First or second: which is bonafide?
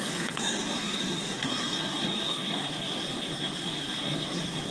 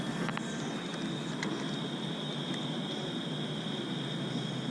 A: second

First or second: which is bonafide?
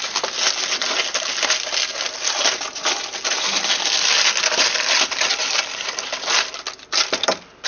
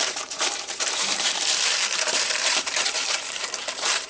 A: first